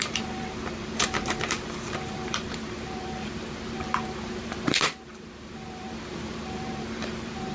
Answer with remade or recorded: remade